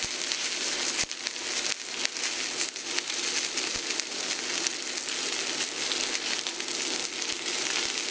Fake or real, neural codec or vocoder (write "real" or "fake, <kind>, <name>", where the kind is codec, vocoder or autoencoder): real